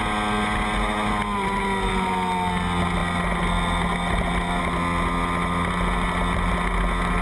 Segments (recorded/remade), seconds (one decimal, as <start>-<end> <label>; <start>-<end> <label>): 0.0-7.2 recorded